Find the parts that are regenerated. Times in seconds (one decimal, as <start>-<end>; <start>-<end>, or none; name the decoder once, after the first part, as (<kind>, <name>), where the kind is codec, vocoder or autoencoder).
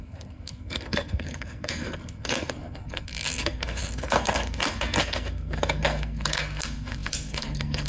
0.0-7.9 (codec, SNAC)